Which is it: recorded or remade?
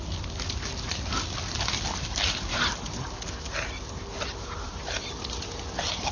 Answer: recorded